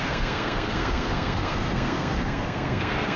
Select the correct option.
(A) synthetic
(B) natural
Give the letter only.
A